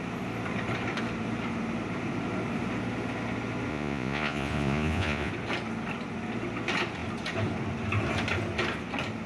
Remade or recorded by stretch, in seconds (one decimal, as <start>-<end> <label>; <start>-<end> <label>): 0.0-3.7 recorded; 3.7-5.3 remade; 5.3-9.3 recorded